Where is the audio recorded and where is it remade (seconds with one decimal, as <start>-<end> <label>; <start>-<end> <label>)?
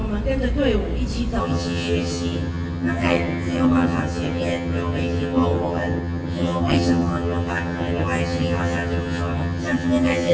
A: 0.0-1.4 recorded; 1.4-10.3 remade